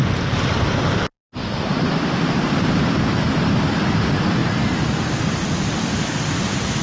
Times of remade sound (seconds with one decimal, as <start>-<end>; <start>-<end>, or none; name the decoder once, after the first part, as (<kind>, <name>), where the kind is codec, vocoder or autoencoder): 1.5-2.8 (vocoder, BigVGAN v2)